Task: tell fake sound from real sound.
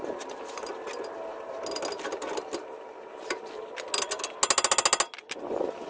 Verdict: real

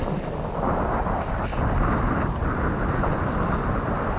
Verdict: real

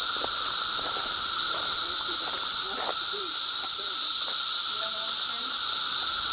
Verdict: real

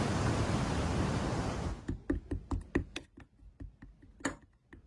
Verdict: real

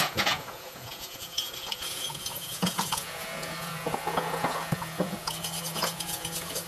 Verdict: fake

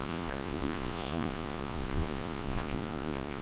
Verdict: fake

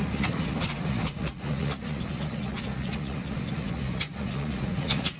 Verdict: fake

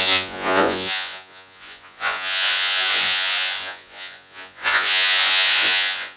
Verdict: fake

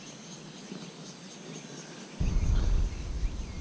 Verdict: real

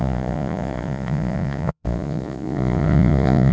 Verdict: fake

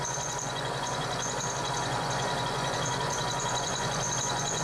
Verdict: fake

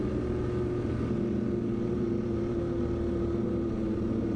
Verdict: real